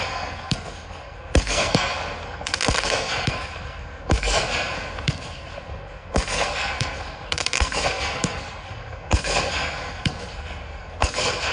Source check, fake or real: fake